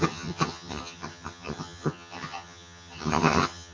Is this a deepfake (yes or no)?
yes